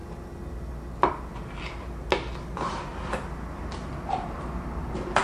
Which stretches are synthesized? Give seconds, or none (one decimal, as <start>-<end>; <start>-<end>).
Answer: none